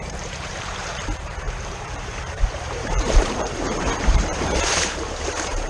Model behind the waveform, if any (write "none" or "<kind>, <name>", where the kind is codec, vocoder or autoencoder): vocoder, BigVGAN v2